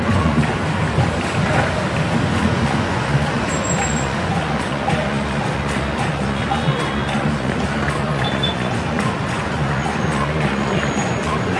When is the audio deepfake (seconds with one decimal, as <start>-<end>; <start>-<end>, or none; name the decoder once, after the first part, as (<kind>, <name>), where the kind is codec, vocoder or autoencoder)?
0.0-0.5 (vocoder, Vocos); 2.3-11.6